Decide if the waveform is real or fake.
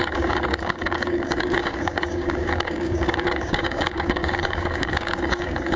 fake